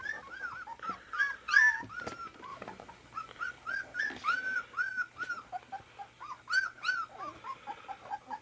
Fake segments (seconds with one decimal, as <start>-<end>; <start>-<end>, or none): none